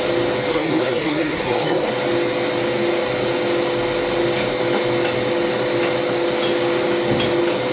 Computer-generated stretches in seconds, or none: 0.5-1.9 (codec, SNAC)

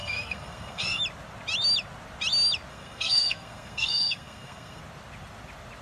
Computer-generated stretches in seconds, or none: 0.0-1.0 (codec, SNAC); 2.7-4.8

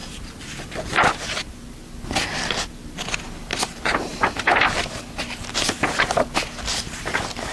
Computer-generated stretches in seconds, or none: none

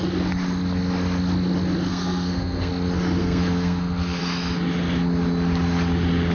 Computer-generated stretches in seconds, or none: 1.9-2.7 (codec, SNAC); 3.2-4.2

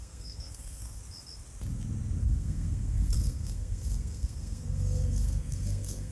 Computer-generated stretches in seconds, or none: 0.0-1.0 (codec, SNAC); 2.2-6.1